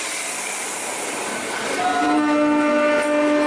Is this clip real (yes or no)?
yes